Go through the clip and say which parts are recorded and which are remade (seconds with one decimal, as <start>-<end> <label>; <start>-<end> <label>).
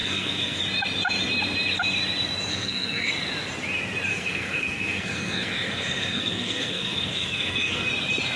0.0-0.6 remade; 0.6-2.5 recorded; 2.5-3.1 remade; 3.1-4.1 recorded; 4.1-7.9 remade; 7.9-8.4 recorded